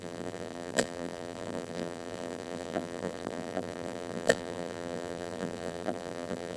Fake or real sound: fake